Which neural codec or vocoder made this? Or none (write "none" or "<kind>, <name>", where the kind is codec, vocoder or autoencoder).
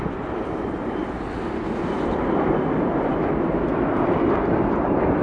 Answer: vocoder, BigVGAN v2